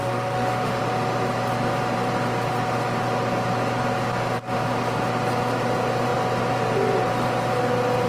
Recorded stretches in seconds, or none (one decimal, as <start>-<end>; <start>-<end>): 0.8-8.1